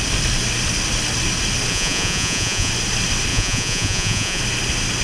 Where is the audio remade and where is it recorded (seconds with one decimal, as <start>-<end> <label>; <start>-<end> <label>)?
0.0-1.7 recorded; 1.7-2.7 remade; 2.7-3.3 recorded; 3.3-4.4 remade; 4.4-5.0 recorded